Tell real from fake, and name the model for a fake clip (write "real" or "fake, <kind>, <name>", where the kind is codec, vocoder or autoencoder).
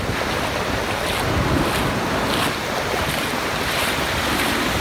real